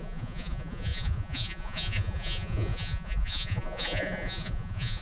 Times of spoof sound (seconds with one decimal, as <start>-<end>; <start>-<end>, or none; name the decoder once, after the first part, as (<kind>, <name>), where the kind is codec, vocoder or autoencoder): 0.0-5.0 (vocoder, Vocos)